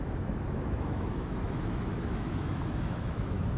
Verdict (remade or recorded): remade